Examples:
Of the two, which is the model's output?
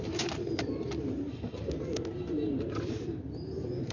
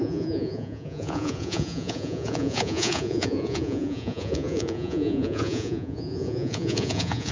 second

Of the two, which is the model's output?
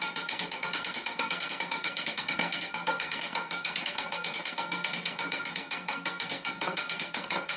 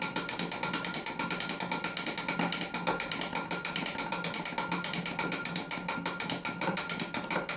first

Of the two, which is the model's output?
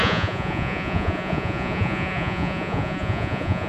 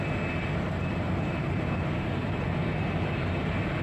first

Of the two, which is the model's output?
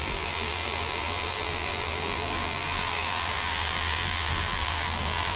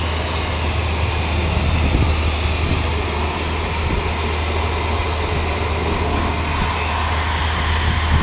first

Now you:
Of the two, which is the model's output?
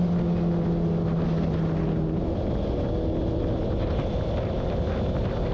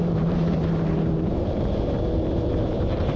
second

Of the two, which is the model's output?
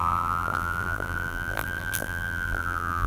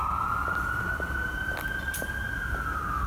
first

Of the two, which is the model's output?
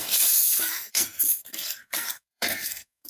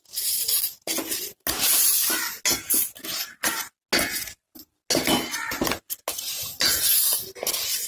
first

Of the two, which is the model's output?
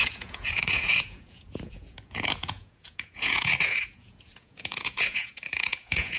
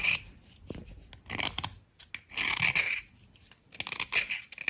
first